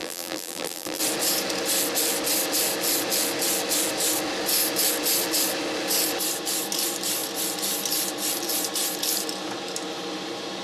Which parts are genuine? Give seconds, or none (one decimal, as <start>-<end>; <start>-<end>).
1.0-10.6